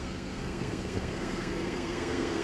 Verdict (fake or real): fake